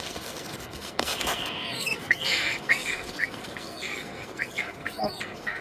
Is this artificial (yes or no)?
yes